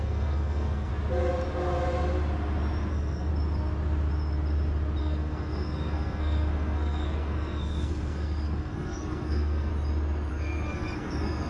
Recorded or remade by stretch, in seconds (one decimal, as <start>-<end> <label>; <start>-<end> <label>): 0.0-0.9 remade; 0.9-2.9 recorded; 2.9-3.3 remade; 3.3-5.0 recorded; 5.0-9.7 remade; 9.7-10.3 recorded; 10.3-11.5 remade